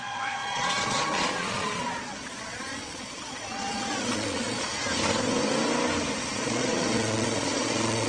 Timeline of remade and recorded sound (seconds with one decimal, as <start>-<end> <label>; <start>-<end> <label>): 0.0-4.7 remade; 4.7-6.2 recorded; 6.2-8.1 remade